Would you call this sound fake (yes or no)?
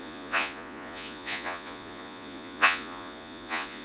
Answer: yes